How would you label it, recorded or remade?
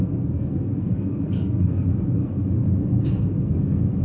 remade